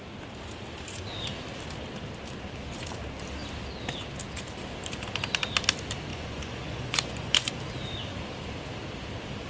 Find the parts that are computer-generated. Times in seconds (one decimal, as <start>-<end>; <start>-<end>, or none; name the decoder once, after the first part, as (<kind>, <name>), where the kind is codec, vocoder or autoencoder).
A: 6.1-7.5 (vocoder, Vocos)

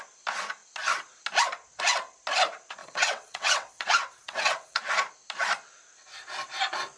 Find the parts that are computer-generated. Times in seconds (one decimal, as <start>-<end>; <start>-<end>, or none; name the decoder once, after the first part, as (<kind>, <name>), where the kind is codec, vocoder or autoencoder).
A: 2.8-4.9 (vocoder, WaveNeXt)

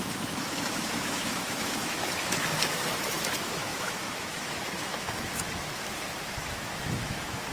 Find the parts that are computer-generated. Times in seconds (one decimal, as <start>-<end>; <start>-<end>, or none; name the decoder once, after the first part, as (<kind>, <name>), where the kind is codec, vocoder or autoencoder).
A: 0.0-7.5 (autoencoder, DAC-VAE)

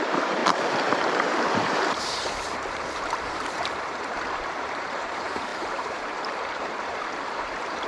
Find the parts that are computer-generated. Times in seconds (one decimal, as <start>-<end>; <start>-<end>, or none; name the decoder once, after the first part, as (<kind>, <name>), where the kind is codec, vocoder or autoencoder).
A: 0.0-7.9 (vocoder, BigVGAN v2)

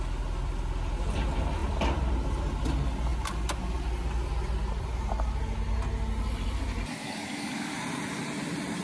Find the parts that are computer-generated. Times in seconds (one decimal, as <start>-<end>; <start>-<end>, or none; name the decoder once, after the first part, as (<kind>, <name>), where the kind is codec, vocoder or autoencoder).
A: 7.0-7.7 (codec, DAC)

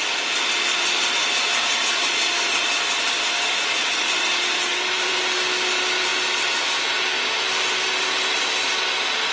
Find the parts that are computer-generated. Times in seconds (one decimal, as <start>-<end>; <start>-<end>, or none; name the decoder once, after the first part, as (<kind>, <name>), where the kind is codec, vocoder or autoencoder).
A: 1.3-4.1 (vocoder, BigVGAN v2); 4.7-5.2